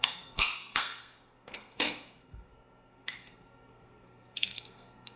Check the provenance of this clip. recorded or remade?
remade